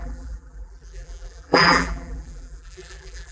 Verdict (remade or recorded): remade